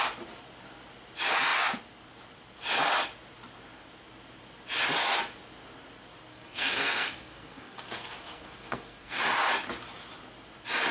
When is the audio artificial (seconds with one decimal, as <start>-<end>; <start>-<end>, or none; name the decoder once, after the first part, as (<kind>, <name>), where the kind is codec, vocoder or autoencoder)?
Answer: 6.3-9.2 (codec, SNAC)